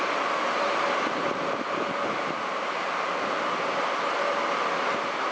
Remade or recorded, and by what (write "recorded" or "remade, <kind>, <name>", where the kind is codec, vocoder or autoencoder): recorded